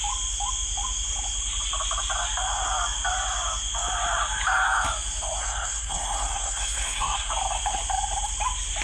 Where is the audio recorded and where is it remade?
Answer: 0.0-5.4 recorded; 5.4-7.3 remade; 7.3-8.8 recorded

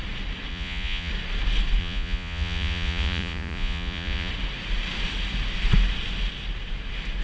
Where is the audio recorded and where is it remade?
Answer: 0.0-0.5 recorded; 0.5-1.1 remade; 1.1-1.8 recorded; 1.8-4.3 remade; 4.3-7.2 recorded

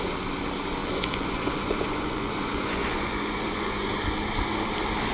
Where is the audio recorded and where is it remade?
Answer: 0.0-0.8 recorded; 0.8-3.9 remade; 3.9-5.1 recorded

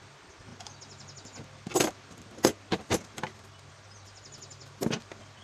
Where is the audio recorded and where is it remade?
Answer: 0.0-5.4 recorded

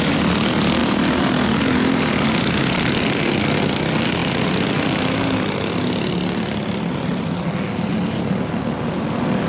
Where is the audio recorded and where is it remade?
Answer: 0.0-9.5 recorded

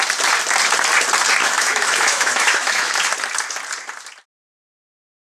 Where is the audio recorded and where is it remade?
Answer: 0.0-1.4 recorded; 1.4-3.0 remade; 3.0-5.3 recorded